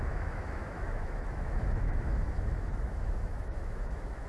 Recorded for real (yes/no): no